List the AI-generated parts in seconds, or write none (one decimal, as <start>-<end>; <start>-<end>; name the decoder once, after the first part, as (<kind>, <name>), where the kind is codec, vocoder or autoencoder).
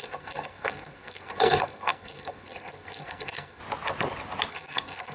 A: 0.0-3.6 (codec, SNAC); 4.5-5.1